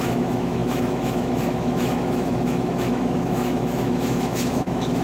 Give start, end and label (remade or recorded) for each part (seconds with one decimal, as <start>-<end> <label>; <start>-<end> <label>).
0.0-5.0 remade